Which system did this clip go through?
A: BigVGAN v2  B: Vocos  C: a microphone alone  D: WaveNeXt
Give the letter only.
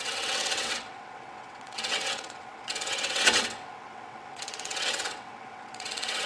D